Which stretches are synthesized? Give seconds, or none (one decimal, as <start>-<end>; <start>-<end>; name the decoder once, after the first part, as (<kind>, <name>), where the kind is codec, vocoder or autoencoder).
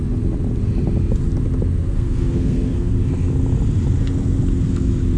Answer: 1.8-2.9 (codec, SNAC)